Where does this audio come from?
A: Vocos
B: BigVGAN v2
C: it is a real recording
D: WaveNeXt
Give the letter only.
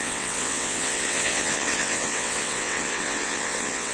D